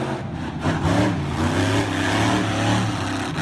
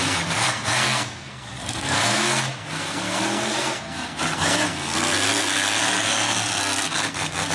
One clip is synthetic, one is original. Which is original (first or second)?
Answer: first